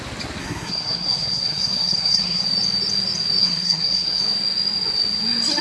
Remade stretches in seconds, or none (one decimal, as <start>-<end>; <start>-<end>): 0.4-2.4; 3.4-4.2